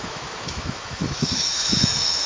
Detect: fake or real fake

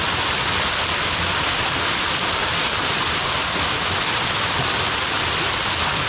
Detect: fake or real real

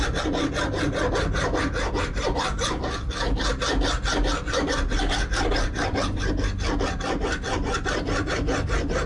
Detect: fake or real real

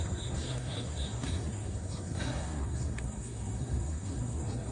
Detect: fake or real fake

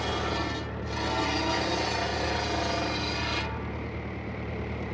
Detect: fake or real real